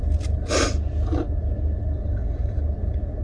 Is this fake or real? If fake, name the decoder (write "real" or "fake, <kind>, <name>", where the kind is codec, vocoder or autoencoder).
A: real